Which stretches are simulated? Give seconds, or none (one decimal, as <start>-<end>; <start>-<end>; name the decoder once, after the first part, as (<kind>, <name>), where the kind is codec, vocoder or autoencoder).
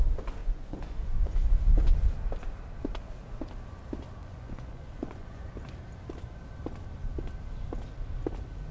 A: 0.4-1.5 (vocoder, Vocos); 4.2-5.5